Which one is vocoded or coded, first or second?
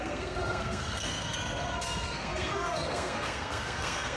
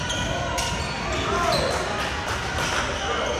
first